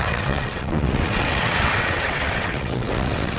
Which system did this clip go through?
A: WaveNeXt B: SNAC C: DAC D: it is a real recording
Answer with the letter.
A